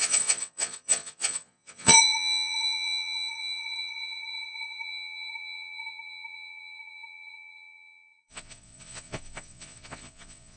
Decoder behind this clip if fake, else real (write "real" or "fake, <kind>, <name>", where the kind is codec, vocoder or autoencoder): fake, vocoder, Vocos